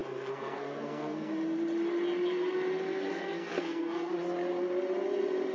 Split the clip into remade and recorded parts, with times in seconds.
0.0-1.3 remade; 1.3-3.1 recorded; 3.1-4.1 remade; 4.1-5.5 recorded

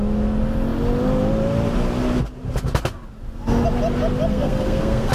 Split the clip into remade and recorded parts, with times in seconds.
0.0-4.3 recorded; 4.3-5.1 remade

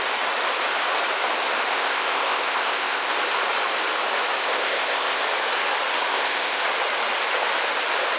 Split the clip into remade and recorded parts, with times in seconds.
0.0-1.7 recorded; 1.7-3.1 remade; 3.1-4.4 recorded; 4.4-5.2 remade; 5.2-6.1 recorded; 6.1-6.6 remade; 6.6-8.2 recorded

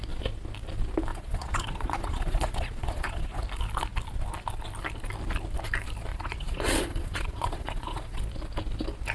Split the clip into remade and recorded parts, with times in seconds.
0.0-1.1 recorded; 1.1-3.4 remade; 3.4-6.1 recorded; 6.1-8.2 remade; 8.2-9.1 recorded

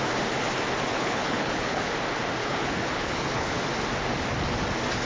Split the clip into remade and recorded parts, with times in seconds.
0.0-0.9 recorded; 0.9-1.9 remade; 1.9-2.4 recorded; 2.4-3.6 remade; 3.6-5.1 recorded

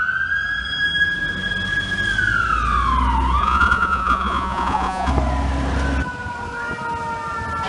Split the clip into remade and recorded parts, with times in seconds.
0.0-3.4 recorded; 3.4-5.1 remade; 5.1-7.7 recorded